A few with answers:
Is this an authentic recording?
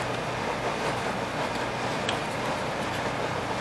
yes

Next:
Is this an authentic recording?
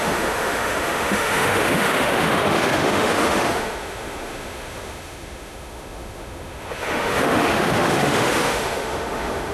no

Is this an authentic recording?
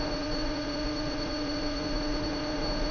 no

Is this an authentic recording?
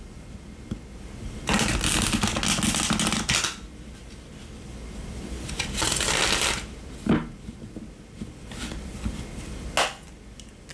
yes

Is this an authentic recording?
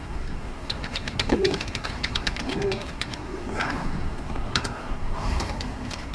no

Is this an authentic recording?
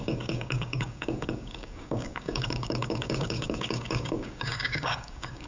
no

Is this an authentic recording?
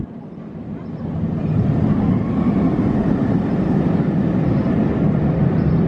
yes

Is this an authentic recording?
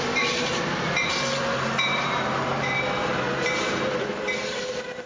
no